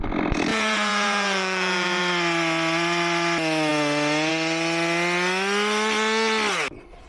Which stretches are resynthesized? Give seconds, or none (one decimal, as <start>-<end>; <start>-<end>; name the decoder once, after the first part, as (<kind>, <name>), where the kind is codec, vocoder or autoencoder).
0.5-2.0 (vocoder, Vocos)